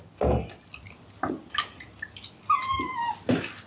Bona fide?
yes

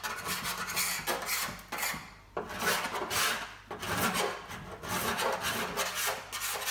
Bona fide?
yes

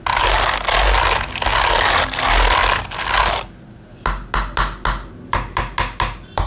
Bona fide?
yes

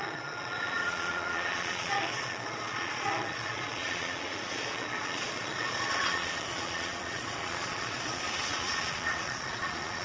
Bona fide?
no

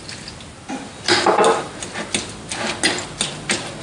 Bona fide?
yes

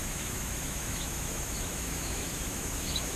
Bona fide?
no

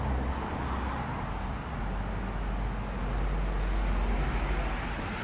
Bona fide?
yes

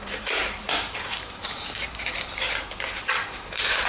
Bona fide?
no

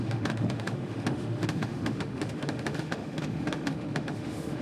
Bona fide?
no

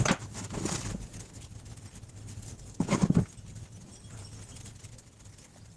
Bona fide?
yes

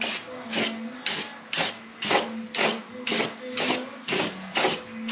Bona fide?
yes